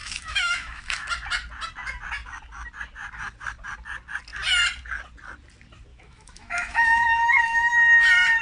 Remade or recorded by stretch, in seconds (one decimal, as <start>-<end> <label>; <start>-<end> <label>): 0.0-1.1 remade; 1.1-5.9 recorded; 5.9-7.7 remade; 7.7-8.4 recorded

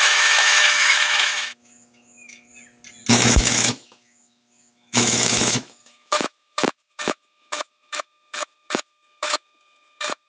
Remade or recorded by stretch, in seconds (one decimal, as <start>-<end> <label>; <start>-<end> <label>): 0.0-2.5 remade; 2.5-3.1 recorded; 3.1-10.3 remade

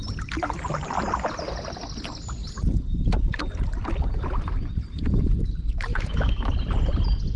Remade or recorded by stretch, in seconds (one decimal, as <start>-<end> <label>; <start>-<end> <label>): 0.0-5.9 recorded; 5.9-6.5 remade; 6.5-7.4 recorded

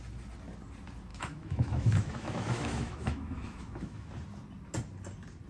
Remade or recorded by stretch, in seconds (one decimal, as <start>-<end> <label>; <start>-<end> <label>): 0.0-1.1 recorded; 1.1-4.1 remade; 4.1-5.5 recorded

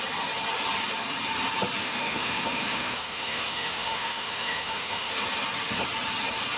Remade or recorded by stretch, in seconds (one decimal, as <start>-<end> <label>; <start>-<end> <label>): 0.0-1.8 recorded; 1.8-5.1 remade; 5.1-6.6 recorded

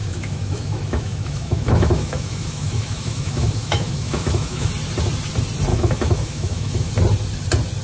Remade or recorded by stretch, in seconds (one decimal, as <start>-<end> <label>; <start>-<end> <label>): 0.0-4.7 remade; 4.7-5.7 recorded; 5.7-6.9 remade; 6.9-7.8 recorded

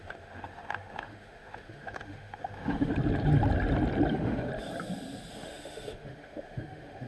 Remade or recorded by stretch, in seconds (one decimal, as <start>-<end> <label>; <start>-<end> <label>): 0.0-2.9 remade; 2.9-4.1 recorded; 4.1-4.5 remade; 4.5-5.3 recorded; 5.3-7.1 remade